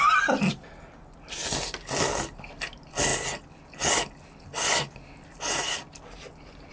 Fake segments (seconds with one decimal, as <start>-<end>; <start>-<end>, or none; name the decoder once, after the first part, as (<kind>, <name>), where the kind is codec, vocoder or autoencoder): none